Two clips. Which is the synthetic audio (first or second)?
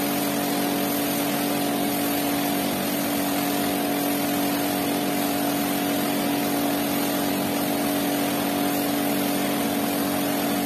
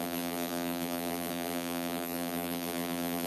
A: second